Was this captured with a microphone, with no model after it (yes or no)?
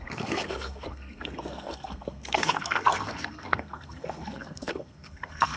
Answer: no